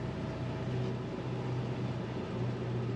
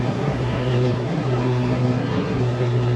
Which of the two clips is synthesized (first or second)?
second